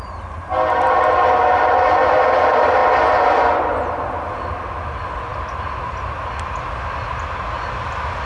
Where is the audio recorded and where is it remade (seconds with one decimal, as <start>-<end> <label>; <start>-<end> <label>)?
0.0-8.3 recorded